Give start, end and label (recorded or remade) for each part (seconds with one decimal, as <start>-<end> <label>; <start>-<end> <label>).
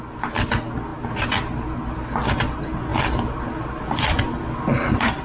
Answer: 0.0-5.2 recorded